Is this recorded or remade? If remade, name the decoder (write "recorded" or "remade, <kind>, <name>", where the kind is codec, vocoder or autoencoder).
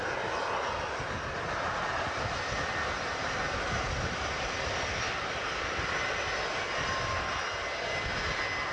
recorded